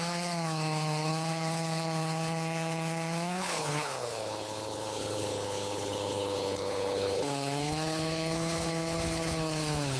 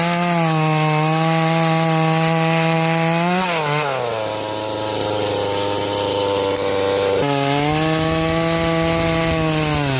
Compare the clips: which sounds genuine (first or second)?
second